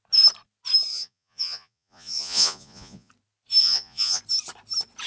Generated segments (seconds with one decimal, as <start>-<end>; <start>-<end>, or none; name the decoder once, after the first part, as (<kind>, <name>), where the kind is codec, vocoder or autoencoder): 0.9-3.1 (vocoder, Vocos); 3.6-4.2